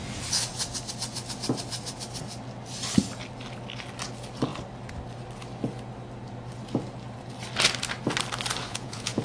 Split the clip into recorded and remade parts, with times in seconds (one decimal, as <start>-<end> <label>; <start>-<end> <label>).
0.0-8.7 recorded; 8.7-9.2 remade